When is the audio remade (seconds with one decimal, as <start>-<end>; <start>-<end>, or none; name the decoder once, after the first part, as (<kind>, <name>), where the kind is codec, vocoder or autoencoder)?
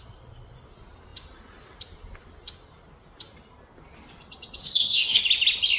4.6-5.2 (codec, SNAC)